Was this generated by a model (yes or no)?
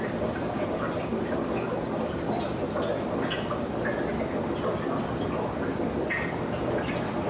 no